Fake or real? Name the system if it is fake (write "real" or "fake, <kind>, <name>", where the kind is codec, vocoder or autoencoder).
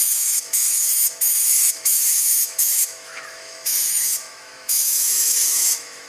fake, autoencoder, DAC-VAE